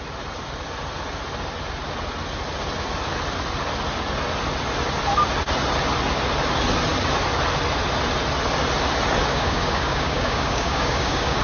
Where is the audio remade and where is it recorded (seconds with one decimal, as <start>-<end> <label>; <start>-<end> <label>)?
0.0-9.3 recorded; 9.3-11.4 remade